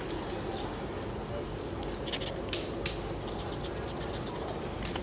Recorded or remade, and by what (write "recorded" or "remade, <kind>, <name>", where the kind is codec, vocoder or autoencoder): recorded